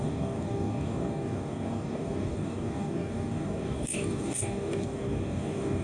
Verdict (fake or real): fake